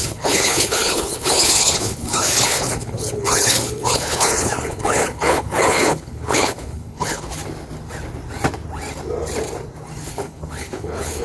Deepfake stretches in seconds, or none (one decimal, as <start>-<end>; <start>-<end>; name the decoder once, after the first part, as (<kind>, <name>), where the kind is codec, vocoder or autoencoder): 0.0-7.4 (codec, HILCodec); 10.0-11.2